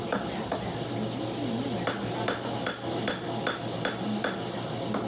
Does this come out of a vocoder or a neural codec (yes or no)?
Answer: no